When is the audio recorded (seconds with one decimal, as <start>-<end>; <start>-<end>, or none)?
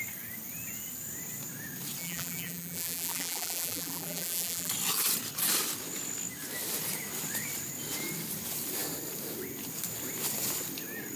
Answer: 0.0-2.0; 4.7-11.2